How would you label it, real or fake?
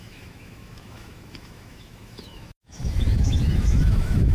fake